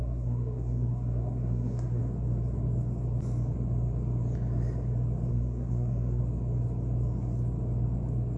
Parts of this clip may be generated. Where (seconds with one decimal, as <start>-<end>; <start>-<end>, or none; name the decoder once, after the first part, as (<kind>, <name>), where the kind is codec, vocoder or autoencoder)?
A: 0.0-2.0 (codec, SNAC); 5.3-6.2